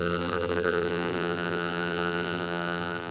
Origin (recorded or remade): remade